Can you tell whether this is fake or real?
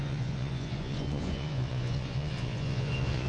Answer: fake